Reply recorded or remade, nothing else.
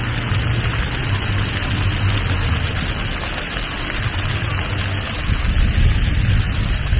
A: recorded